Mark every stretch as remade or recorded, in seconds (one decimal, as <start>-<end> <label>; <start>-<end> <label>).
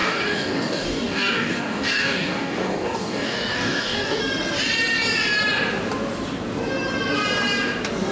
0.0-4.2 remade; 4.2-8.1 recorded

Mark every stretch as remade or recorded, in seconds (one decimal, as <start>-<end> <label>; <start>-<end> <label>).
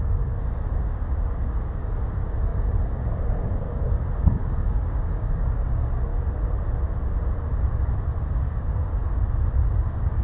0.0-6.1 remade; 6.1-8.3 recorded; 8.3-9.0 remade; 9.0-9.7 recorded; 9.7-10.2 remade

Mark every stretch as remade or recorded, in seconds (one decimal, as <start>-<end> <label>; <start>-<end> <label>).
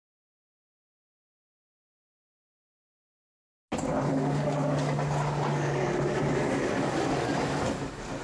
0.0-4.1 recorded; 4.1-8.2 remade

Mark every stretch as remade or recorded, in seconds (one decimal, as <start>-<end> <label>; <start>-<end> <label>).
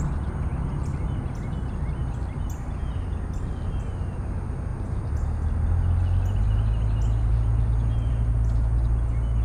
0.0-9.4 recorded